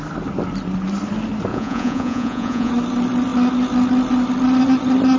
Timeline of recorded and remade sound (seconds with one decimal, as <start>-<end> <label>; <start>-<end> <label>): 0.0-1.5 recorded; 1.5-2.7 remade; 2.7-5.2 recorded